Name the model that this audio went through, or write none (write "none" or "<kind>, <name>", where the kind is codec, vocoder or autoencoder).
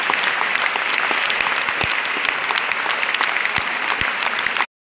none